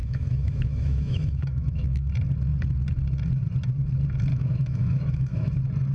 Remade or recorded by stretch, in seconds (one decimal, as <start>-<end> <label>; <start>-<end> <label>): 0.0-2.1 remade; 2.1-4.3 recorded; 4.3-5.5 remade; 5.5-5.9 recorded